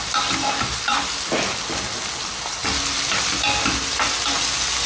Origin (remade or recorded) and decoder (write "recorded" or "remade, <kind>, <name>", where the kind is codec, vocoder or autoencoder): recorded